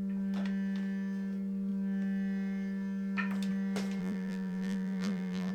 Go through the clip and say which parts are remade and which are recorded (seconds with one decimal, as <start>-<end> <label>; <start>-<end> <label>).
0.0-4.0 recorded; 4.0-5.5 remade